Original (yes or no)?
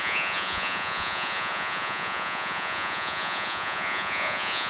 no